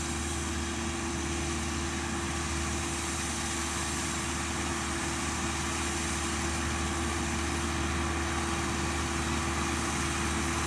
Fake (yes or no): no